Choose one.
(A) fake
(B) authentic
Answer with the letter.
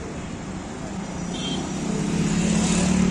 B